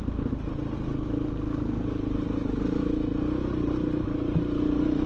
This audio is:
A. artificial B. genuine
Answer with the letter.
B